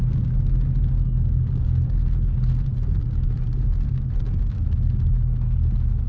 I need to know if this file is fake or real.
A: real